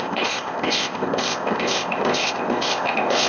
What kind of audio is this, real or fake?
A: fake